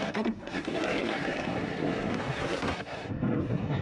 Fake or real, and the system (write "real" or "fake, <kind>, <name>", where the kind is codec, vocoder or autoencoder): fake, codec, SNAC